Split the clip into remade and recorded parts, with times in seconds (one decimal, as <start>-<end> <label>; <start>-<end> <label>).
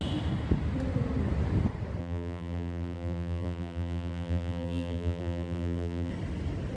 0.0-2.0 recorded; 2.0-6.1 remade; 6.1-6.8 recorded